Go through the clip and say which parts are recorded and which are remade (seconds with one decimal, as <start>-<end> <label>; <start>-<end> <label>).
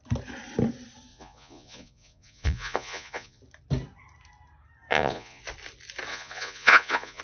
0.0-1.1 recorded; 1.1-3.4 remade; 3.4-4.9 recorded; 4.9-5.4 remade; 5.4-6.1 recorded; 6.1-7.2 remade